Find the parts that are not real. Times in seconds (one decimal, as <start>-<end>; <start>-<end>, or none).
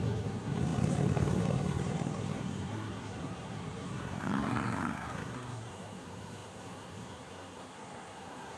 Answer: 0.0-8.6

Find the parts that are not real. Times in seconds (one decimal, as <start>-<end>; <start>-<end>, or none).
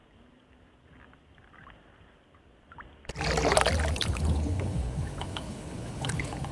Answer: 3.9-6.5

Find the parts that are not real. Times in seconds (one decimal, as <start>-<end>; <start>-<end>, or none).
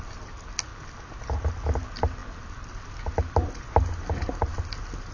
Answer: none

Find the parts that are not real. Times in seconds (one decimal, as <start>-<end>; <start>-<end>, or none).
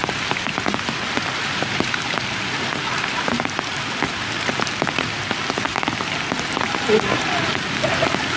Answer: none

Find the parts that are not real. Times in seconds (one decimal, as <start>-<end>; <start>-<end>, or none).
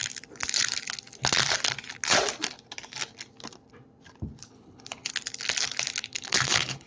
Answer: 4.5-5.1; 6.1-6.9